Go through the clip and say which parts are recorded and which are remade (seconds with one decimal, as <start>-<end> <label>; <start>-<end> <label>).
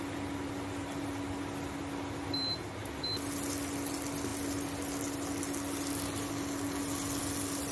0.0-7.7 recorded